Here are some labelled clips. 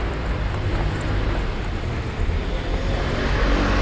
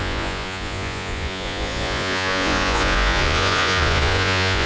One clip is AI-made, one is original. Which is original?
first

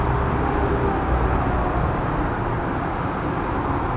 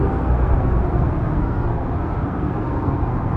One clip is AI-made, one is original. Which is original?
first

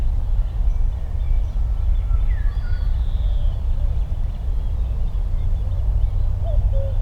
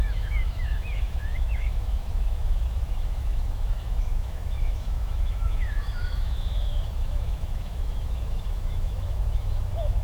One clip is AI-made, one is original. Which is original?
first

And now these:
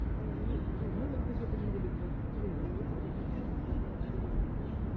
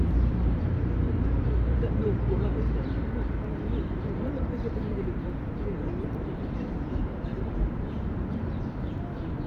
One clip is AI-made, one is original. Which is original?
first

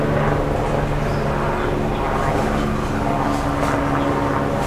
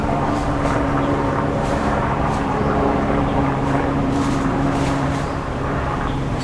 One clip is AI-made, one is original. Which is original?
first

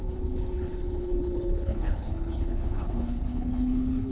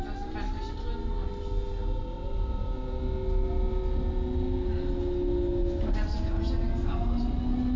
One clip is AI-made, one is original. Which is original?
second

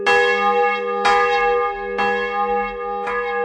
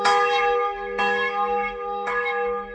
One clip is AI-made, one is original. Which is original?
first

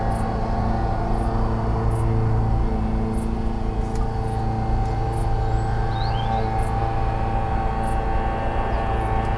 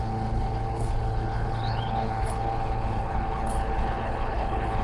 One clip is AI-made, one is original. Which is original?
first